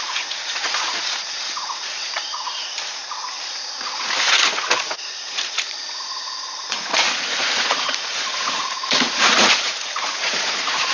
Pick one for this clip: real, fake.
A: fake